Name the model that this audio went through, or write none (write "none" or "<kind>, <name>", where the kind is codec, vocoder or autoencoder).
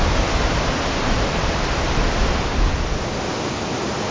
none